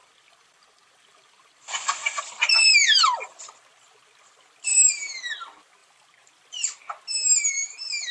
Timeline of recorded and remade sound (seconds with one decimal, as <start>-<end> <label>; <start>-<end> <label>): 0.0-2.2 remade; 2.2-8.1 recorded